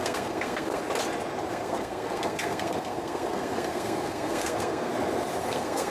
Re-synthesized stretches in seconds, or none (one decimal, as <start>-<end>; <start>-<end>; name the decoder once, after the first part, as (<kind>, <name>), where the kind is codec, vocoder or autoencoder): 0.0-0.8 (codec, SNAC); 1.5-4.9; 5.4-5.9